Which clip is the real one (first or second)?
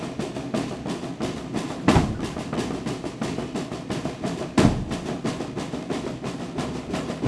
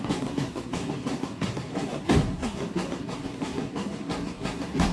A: first